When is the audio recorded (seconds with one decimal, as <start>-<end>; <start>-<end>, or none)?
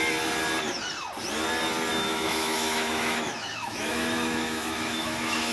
0.0-1.9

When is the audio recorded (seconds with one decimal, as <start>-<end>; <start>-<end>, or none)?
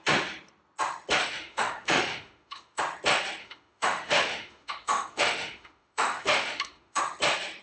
0.0-1.2; 2.8-3.4; 7.0-7.6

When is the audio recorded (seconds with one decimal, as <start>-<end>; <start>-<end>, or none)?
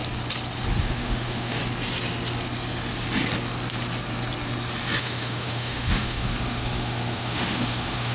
0.0-0.8; 1.6-5.0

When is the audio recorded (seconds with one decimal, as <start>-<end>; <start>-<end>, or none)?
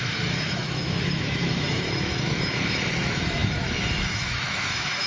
none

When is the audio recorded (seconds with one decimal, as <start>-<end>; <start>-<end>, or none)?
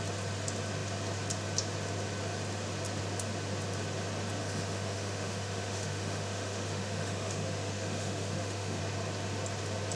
0.0-4.4; 8.8-10.0